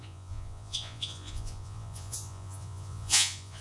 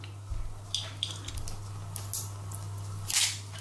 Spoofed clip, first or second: first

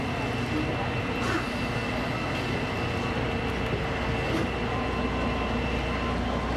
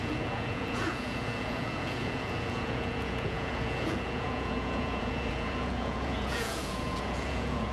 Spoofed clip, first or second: second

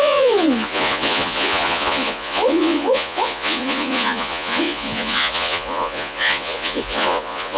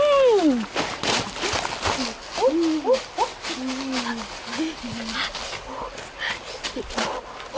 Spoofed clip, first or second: first